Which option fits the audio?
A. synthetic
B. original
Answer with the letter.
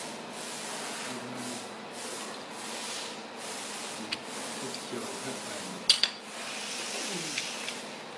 B